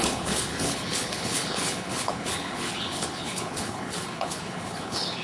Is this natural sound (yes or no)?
no